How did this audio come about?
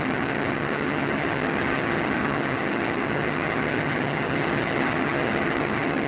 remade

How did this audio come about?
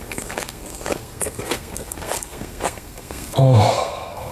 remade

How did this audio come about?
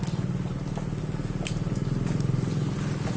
recorded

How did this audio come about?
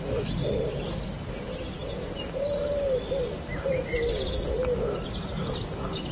recorded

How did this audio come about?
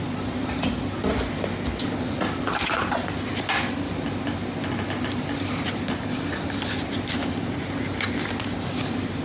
recorded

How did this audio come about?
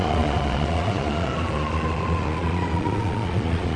remade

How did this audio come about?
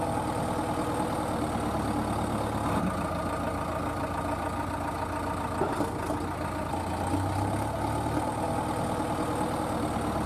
recorded